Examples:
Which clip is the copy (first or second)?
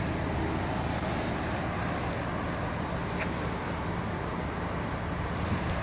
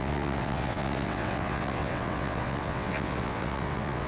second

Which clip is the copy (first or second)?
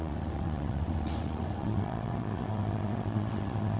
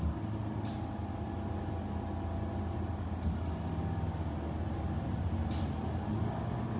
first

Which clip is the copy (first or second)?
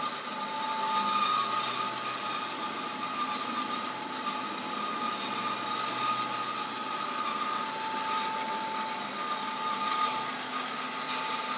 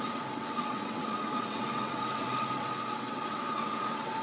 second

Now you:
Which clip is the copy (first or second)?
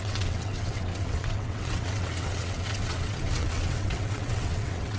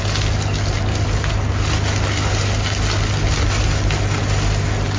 first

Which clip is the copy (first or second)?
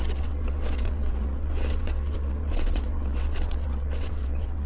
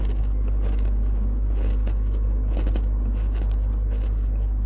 first